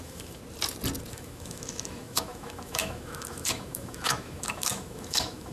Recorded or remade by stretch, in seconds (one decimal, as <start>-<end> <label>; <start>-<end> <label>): 0.0-0.4 remade; 0.4-1.1 recorded; 1.1-5.5 remade